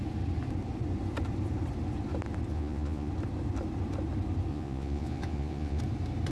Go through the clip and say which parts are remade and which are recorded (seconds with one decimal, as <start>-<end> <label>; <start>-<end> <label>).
0.0-2.5 recorded; 2.5-3.1 remade; 3.1-4.5 recorded; 4.5-5.8 remade; 5.8-6.3 recorded